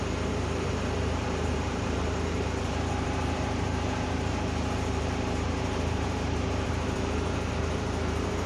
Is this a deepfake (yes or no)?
yes